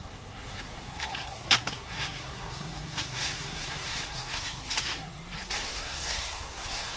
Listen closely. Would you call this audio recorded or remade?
remade